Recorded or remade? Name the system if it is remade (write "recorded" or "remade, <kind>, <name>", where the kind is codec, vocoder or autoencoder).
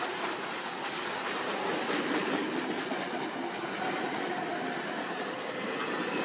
recorded